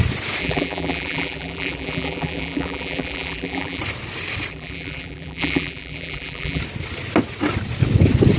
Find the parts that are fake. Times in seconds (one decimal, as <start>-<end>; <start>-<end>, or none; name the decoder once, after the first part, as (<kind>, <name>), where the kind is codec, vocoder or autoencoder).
0.4-3.8 (vocoder, BigVGAN v2); 4.5-6.6